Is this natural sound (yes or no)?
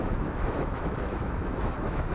no